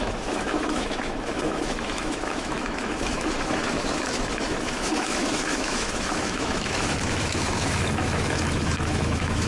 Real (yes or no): no